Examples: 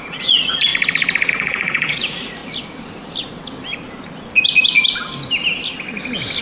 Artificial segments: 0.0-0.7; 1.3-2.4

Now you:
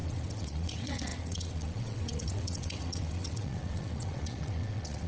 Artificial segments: 0.0-5.1